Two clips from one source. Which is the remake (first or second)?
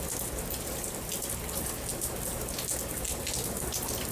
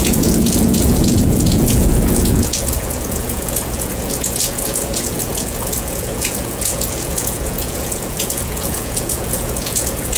second